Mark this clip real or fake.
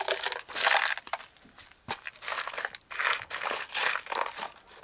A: real